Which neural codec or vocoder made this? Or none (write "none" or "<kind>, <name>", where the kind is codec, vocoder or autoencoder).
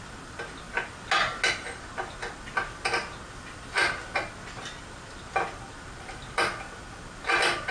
none